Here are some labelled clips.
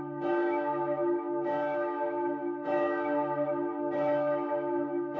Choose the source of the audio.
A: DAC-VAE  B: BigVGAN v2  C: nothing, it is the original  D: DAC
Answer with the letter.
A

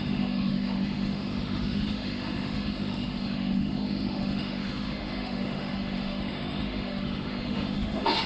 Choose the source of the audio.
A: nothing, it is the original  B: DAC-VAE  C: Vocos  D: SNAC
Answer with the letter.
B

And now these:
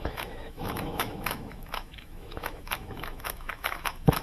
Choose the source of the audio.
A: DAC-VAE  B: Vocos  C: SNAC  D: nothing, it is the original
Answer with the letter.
A